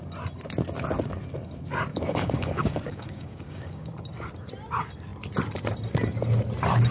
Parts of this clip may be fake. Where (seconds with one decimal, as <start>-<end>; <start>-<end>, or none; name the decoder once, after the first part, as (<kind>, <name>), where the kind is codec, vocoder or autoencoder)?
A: 1.9-3.9 (codec, DAC)